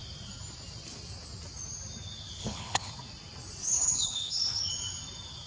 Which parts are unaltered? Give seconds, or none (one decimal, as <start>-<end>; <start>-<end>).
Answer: 0.0-2.4; 2.9-3.6; 4.6-5.5